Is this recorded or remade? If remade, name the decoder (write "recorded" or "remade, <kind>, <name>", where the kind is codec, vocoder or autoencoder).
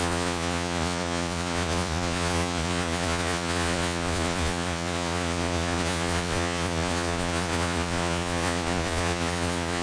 remade, vocoder, Vocos